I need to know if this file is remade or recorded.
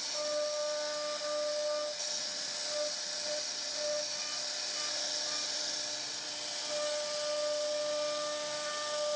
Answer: recorded